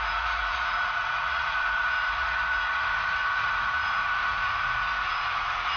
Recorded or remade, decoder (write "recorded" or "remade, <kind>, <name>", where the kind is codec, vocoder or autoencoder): remade, vocoder, Vocos